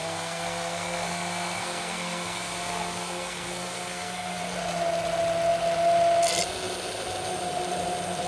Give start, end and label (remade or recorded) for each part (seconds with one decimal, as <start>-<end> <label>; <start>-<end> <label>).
0.0-4.4 remade; 4.4-8.3 recorded